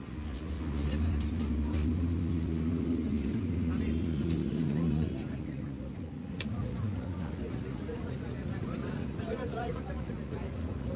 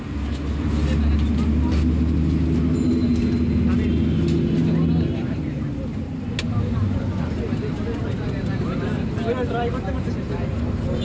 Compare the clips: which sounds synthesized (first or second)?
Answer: first